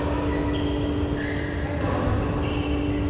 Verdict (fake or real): real